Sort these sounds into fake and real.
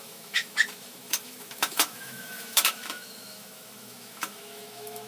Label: fake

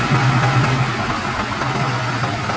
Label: real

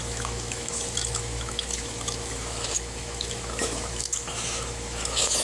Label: fake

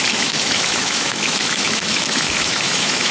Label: fake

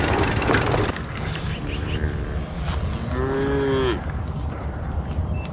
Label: real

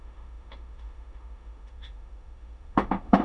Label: fake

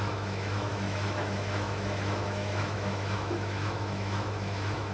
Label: fake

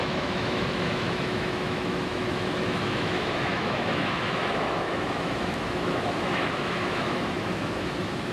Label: fake